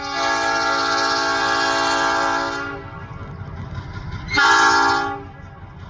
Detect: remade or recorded recorded